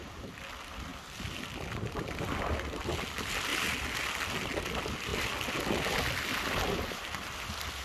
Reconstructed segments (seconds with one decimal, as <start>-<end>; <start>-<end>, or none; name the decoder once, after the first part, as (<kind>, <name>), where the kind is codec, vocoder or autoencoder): none